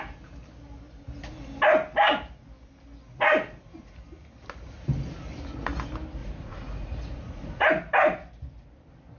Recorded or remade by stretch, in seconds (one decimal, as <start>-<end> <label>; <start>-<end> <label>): 0.0-6.2 recorded; 6.2-7.7 remade; 7.7-9.2 recorded

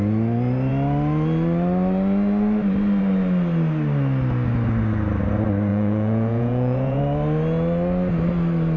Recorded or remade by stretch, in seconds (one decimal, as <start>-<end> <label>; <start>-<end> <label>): 0.0-5.7 recorded; 5.7-7.0 remade; 7.0-8.8 recorded

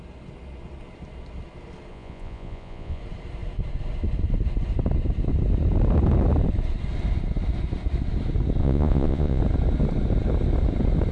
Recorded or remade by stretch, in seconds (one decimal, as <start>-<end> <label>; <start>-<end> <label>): 0.0-1.9 recorded; 1.9-3.0 remade; 3.0-8.6 recorded; 8.6-9.4 remade; 9.4-11.1 recorded

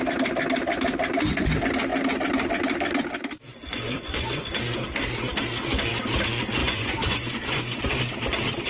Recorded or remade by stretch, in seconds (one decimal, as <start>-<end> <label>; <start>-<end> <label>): 0.0-3.5 recorded; 3.5-4.5 remade; 4.5-6.6 recorded; 6.6-7.8 remade; 7.8-8.7 recorded

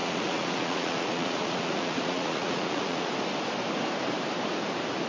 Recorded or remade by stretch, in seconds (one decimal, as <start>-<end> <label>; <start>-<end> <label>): 0.0-3.1 remade; 3.1-5.1 recorded

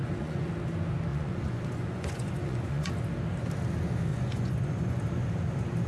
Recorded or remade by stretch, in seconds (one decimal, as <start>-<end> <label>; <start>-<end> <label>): 0.0-0.5 remade; 0.5-1.1 recorded; 1.1-2.9 remade; 2.9-4.1 recorded; 4.1-5.0 remade; 5.0-5.9 recorded

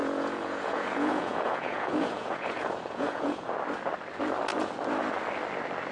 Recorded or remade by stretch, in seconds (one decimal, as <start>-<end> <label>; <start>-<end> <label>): 0.0-3.5 remade; 3.5-5.9 recorded